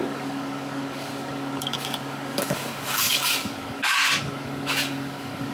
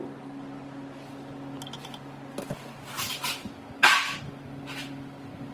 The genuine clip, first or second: second